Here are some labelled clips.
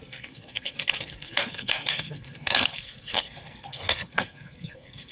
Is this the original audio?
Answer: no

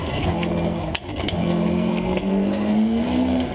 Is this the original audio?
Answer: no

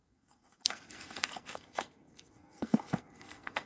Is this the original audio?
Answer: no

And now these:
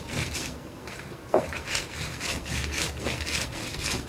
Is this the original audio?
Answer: no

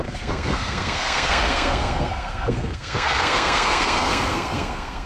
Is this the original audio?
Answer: no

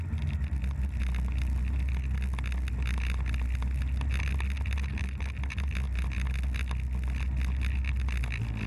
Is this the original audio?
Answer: yes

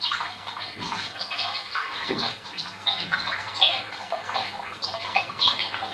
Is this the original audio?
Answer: no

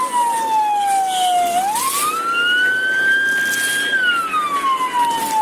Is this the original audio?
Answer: yes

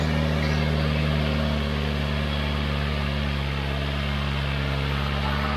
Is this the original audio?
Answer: yes